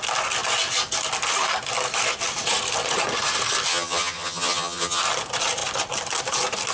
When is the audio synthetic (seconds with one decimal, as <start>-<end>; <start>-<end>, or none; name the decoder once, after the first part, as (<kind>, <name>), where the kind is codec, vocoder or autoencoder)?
3.7-5.0 (vocoder, HiFi-GAN)